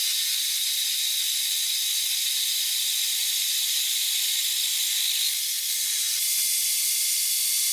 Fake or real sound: real